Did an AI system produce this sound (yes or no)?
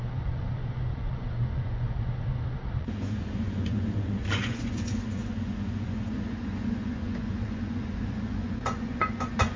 yes